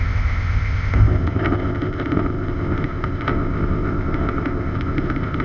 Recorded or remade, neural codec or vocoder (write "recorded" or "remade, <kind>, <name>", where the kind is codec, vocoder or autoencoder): remade, codec, ZipCodec